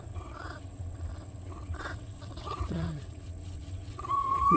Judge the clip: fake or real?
fake